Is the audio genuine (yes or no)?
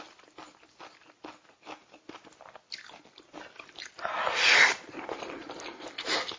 yes